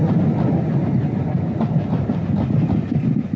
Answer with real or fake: real